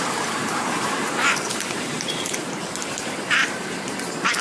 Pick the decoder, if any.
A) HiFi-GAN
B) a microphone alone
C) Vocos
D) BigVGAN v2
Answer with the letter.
D